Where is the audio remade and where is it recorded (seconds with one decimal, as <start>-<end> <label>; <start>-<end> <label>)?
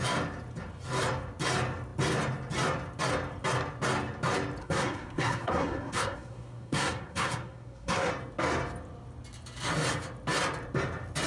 0.0-4.6 recorded; 4.6-8.1 remade; 8.1-11.3 recorded